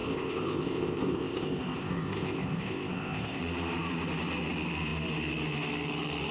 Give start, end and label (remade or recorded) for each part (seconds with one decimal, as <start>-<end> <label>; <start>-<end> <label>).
0.0-3.4 remade; 3.4-6.3 recorded